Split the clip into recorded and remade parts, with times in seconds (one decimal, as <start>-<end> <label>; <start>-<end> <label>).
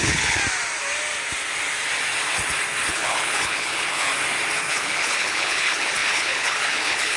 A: 0.0-0.4 remade; 0.4-2.9 recorded; 2.9-4.1 remade; 4.1-4.7 recorded; 4.7-7.2 remade